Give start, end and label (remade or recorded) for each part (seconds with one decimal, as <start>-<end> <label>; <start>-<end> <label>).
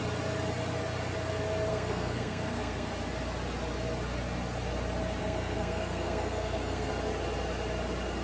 0.0-1.7 recorded; 1.7-2.9 remade; 2.9-5.2 recorded; 5.2-6.9 remade; 6.9-8.2 recorded